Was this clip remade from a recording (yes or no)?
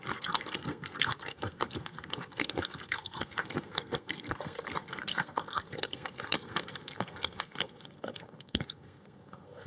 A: yes